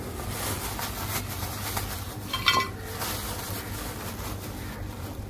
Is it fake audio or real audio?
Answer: real